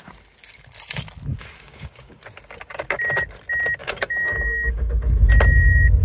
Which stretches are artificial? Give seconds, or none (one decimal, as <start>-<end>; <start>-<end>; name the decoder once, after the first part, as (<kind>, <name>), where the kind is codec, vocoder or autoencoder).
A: 1.3-2.2 (codec, DAC); 3.8-5.3